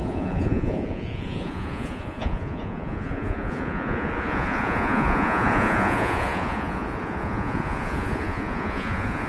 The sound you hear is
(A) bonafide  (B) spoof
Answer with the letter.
B